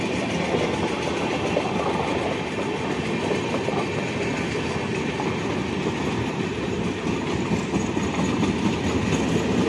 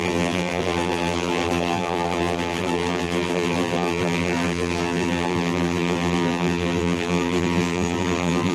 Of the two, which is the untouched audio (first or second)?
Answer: first